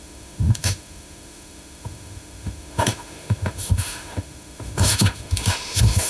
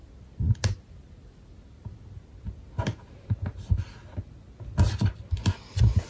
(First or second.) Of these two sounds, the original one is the second